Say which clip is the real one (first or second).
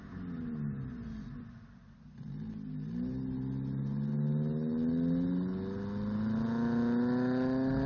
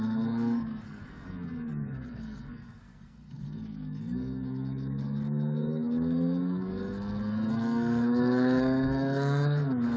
first